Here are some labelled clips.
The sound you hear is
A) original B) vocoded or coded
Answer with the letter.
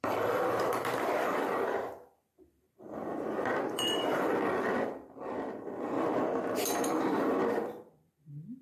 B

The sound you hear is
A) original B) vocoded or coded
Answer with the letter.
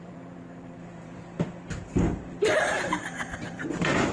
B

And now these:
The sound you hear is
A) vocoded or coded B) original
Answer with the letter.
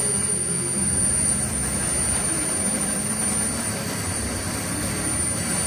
A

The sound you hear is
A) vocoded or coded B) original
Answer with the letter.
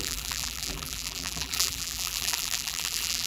A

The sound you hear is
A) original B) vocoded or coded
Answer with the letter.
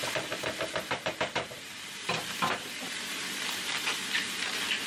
B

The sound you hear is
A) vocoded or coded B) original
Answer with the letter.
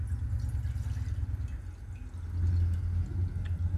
B